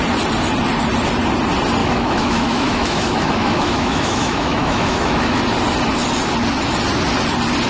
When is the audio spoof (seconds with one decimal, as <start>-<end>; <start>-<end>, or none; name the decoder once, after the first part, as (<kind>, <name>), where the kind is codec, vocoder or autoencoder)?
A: 1.8-5.4 (autoencoder, DAC-VAE)